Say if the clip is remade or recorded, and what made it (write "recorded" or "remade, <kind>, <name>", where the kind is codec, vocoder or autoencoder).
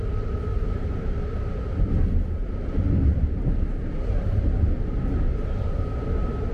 recorded